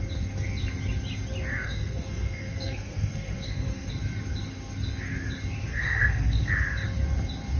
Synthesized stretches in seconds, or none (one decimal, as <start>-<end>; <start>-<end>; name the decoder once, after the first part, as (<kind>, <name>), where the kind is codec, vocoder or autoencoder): 1.5-3.9 (codec, SNAC); 5.7-6.5

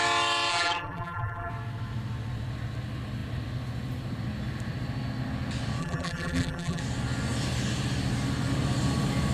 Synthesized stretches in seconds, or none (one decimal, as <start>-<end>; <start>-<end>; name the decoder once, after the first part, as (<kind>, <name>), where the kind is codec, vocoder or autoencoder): 0.5-1.5 (vocoder, BigVGAN v2); 5.8-6.8

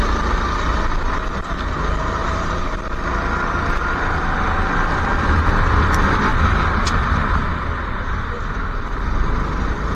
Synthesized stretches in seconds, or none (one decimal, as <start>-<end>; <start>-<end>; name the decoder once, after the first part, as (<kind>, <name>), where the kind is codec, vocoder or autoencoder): 2.2-2.8 (vocoder, BigVGAN v2); 6.3-6.8

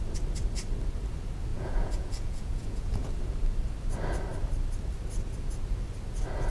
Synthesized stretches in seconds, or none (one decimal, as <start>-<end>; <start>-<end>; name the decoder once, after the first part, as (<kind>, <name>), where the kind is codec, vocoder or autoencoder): 1.5-3.1 (vocoder, Vocos)

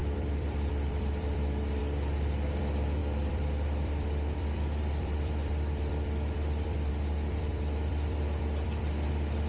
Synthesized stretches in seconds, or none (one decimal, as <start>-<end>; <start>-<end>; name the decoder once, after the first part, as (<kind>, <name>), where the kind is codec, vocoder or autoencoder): 0.0-1.8 (vocoder, BigVGAN v2); 2.6-9.5

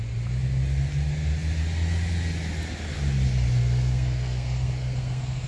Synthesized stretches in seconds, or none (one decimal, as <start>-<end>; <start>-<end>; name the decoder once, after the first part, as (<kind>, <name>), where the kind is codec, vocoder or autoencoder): 3.6-5.5 (codec, SNAC)

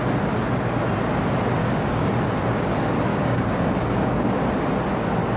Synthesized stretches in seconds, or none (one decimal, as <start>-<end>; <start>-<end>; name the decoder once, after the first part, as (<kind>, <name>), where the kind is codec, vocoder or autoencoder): 1.6-2.1 (codec, DAC); 3.1-4.3